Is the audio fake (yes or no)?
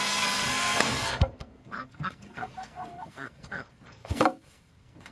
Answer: yes